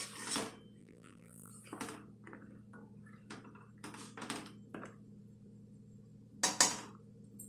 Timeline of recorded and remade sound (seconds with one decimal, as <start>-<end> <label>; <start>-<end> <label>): 0.0-0.8 recorded; 0.8-1.5 remade; 1.5-7.5 recorded